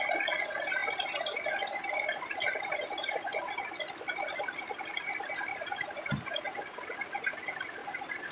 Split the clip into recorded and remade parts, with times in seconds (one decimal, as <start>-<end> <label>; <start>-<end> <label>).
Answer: 0.0-5.5 recorded; 5.5-6.0 remade; 6.0-7.8 recorded; 7.8-8.3 remade